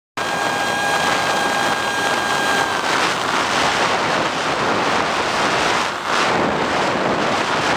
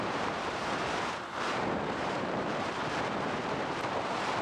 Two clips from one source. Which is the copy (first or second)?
second